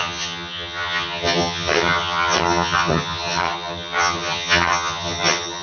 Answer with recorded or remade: remade